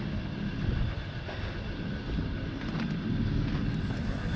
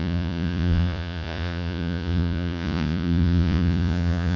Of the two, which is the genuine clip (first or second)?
first